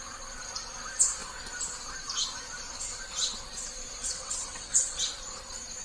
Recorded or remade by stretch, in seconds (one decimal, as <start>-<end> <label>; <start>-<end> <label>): 0.0-4.0 recorded; 4.0-5.0 remade; 5.0-5.8 recorded